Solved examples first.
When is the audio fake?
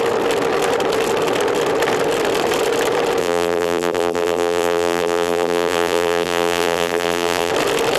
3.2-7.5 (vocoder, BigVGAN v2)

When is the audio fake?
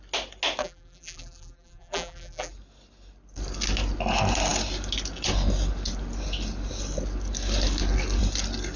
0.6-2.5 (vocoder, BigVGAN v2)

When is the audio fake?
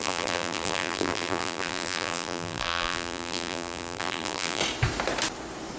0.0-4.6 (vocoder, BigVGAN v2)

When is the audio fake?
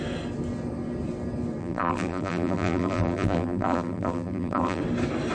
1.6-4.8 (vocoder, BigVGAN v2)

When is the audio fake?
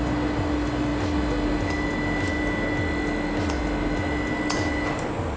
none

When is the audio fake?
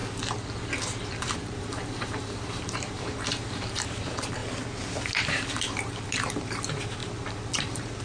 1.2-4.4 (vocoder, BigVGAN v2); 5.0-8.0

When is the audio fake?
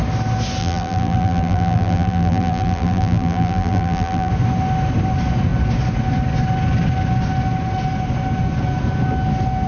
0.6-4.3 (vocoder, BigVGAN v2)